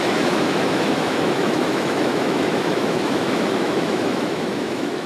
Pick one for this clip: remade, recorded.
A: remade